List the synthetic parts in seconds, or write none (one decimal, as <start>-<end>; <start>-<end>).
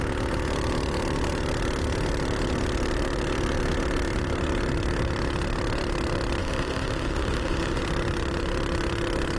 6.4-7.8